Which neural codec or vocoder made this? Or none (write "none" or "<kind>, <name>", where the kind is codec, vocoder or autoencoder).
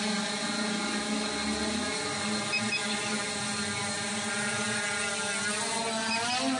none